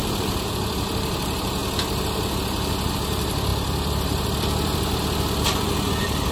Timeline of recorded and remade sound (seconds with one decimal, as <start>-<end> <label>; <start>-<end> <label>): 0.0-1.6 remade; 1.6-2.9 recorded; 2.9-6.3 remade